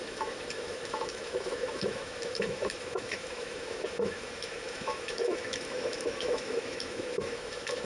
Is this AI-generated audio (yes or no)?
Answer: yes